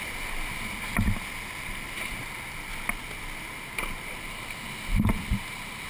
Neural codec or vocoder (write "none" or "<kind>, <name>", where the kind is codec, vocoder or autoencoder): none